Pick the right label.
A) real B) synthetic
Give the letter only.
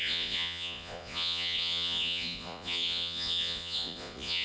B